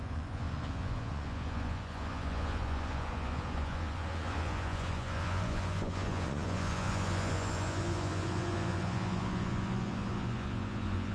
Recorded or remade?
remade